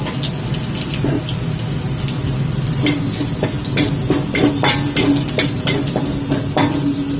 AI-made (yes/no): no